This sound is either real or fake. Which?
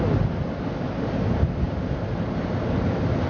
real